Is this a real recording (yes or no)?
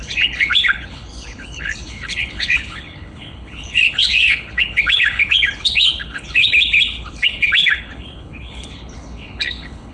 no